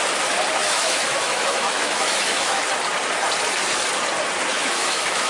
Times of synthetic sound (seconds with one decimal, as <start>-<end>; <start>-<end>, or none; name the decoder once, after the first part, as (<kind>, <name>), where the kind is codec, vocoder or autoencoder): 0.6-2.6 (autoencoder, DAC-VAE); 4.5-5.3